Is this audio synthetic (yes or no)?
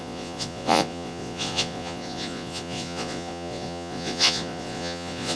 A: yes